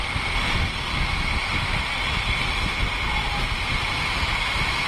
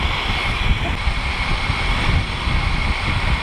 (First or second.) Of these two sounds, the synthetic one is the first